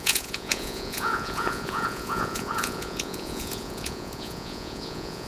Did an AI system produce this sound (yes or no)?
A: yes